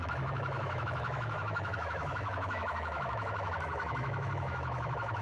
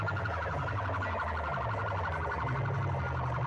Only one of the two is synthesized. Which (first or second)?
first